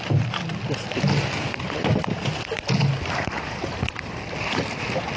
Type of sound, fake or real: real